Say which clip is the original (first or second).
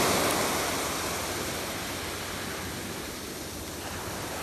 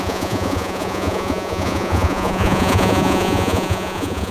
first